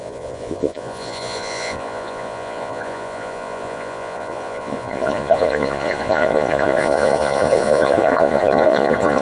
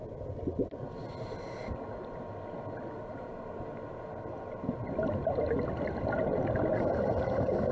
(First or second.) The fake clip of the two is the first